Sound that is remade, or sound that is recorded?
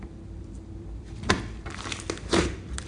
remade